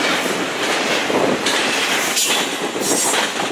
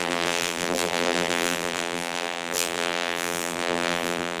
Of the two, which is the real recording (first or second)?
first